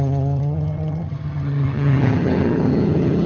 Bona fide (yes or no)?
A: no